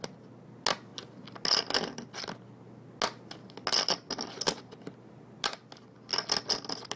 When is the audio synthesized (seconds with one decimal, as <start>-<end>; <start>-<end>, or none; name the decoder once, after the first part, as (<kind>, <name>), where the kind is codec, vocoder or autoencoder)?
none